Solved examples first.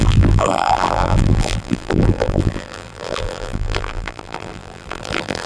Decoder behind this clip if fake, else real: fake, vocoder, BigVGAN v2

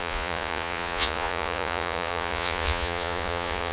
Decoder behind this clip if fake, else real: fake, vocoder, Vocos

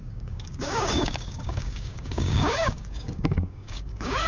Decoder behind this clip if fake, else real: fake, codec, DAC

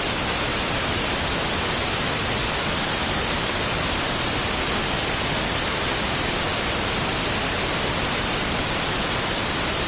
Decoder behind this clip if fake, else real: real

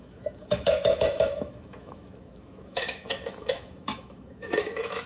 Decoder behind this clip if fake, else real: fake, autoencoder, DAC-VAE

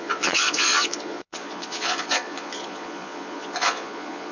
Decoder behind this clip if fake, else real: fake, vocoder, Vocos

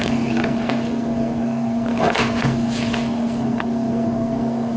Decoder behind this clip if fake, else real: fake, codec, SNAC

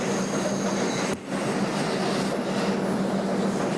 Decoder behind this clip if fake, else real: real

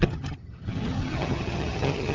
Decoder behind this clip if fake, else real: fake, vocoder, HiFi-GAN